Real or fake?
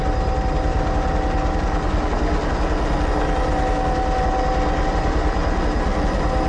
real